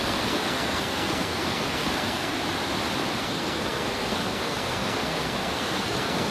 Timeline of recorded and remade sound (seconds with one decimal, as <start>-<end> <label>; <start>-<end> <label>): 0.0-2.4 remade; 2.4-3.2 recorded; 3.2-6.3 remade